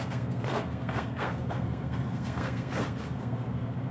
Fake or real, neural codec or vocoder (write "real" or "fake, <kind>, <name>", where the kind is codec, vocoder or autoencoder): fake, codec, SNAC